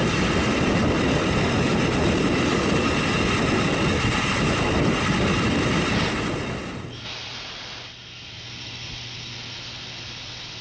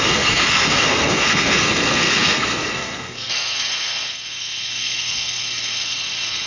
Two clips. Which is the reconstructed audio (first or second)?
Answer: second